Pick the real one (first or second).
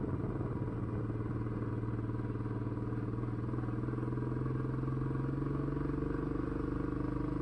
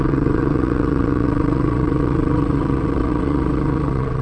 first